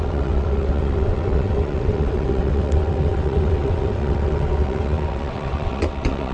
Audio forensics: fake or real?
fake